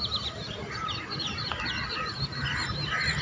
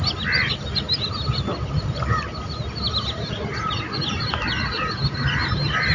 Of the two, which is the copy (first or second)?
first